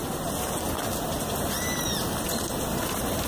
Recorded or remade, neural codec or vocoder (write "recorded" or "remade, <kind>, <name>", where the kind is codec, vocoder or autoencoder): recorded